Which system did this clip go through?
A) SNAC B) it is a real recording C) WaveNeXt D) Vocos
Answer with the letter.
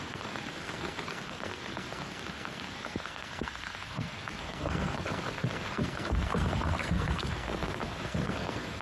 A